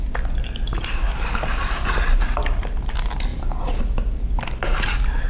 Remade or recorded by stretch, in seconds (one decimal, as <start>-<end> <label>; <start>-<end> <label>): 0.0-3.3 recorded; 3.3-3.8 remade; 3.8-5.3 recorded